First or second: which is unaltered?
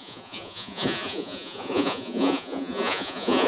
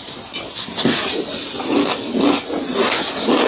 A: second